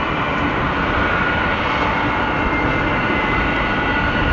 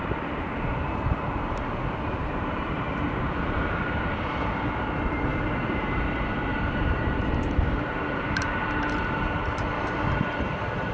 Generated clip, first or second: second